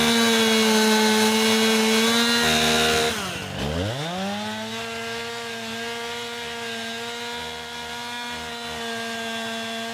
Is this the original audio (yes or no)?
yes